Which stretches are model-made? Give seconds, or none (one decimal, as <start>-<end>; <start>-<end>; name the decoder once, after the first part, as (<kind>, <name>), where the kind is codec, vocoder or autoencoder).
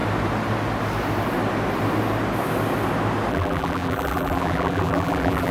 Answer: 3.3-5.5 (vocoder, BigVGAN v2)